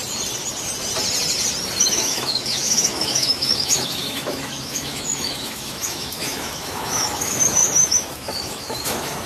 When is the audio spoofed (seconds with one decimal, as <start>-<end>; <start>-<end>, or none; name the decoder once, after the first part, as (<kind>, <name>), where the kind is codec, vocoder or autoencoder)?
1.8-9.3 (autoencoder, DAC-VAE)